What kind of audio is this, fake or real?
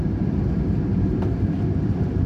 real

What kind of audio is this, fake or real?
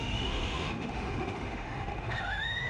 fake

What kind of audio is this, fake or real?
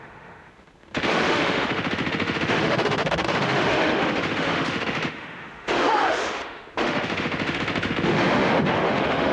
fake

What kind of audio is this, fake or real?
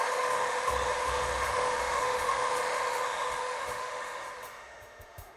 fake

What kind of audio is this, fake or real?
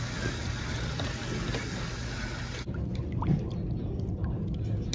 real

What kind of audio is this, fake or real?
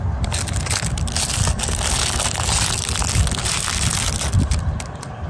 real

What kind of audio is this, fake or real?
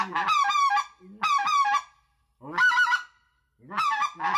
real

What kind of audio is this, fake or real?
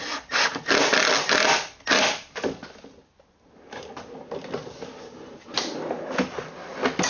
real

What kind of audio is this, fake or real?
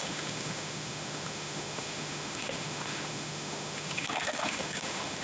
fake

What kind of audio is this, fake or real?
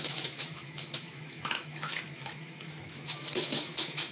fake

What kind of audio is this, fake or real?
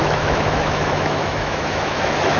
fake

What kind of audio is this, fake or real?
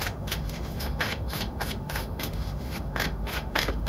fake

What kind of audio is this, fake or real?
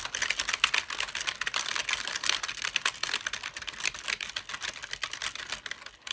real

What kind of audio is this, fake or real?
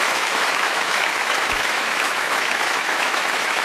fake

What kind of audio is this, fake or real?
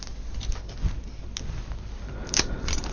real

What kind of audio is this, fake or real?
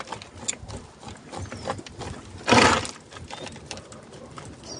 real